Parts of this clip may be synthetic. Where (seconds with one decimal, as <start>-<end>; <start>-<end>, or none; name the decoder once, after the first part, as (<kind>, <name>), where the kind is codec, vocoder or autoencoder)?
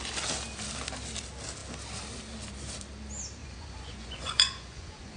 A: 3.4-5.2 (vocoder, Vocos)